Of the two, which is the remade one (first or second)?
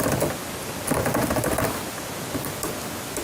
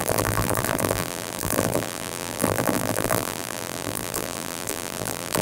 second